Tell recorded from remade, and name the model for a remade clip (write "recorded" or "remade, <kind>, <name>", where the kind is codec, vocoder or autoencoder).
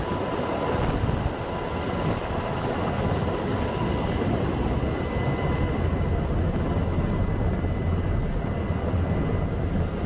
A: recorded